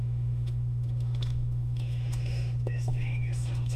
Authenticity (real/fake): fake